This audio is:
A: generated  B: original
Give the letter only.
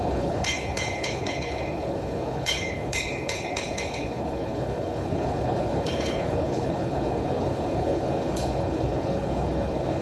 A